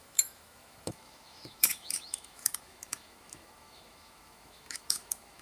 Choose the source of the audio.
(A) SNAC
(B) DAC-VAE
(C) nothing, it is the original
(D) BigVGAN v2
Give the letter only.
B